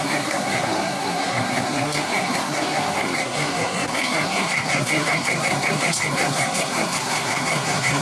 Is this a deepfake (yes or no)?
yes